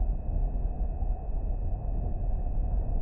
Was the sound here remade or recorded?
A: recorded